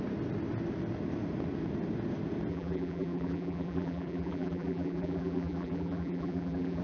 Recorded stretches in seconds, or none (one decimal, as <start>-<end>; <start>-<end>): 0.0-2.5